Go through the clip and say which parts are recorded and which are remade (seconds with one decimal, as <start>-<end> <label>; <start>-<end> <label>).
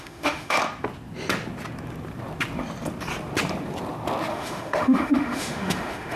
0.0-0.6 remade; 0.6-4.3 recorded; 4.3-6.2 remade